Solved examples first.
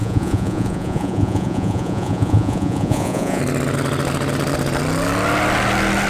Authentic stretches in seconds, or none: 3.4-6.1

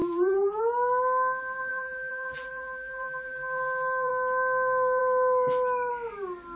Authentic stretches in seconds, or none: 0.6-1.7; 4.1-6.6

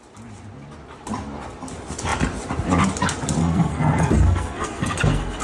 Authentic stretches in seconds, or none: 0.0-3.4